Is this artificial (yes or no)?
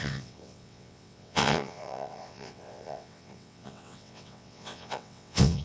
yes